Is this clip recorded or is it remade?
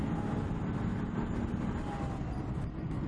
recorded